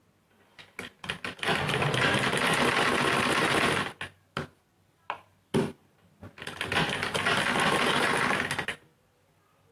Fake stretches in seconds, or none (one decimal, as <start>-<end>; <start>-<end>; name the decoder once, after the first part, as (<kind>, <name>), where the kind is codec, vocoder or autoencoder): none